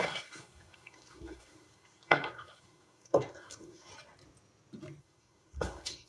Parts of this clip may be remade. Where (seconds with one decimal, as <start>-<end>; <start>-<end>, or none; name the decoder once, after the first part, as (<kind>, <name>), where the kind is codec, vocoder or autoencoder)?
0.0-3.9 (codec, SNAC); 5.0-6.1